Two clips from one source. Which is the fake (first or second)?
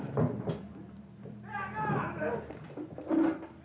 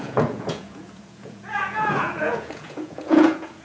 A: second